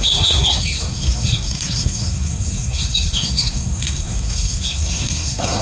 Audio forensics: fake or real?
fake